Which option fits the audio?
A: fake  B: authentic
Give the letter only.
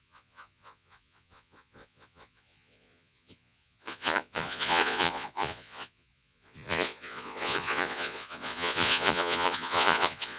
A